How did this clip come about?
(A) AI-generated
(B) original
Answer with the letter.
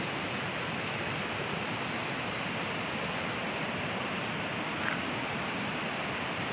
A